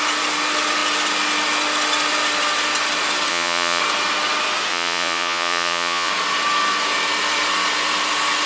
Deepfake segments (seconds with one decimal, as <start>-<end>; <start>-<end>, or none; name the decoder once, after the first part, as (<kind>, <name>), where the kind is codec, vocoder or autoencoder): 3.3-3.8 (vocoder, Vocos); 4.7-6.1